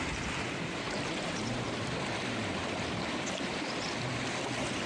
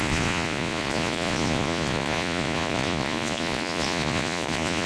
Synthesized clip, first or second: second